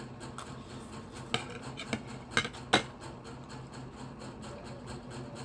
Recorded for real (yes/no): yes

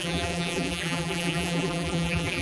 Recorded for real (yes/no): no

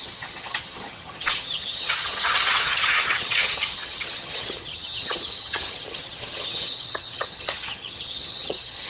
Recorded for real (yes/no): no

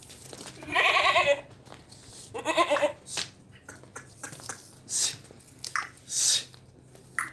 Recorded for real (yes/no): yes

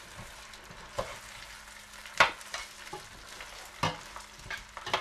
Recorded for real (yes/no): yes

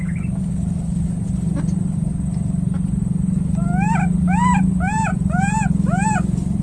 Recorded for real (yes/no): yes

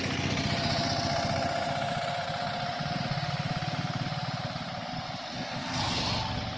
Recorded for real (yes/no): yes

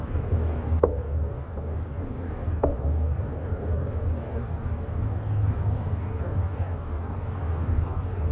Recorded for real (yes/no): no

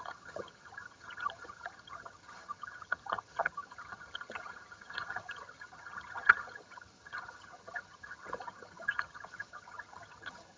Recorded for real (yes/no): no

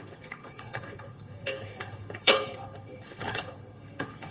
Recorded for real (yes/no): no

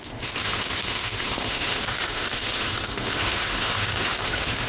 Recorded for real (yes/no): no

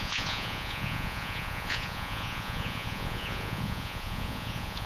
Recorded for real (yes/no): no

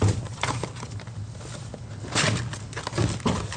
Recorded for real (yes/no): yes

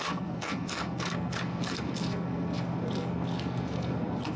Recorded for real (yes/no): no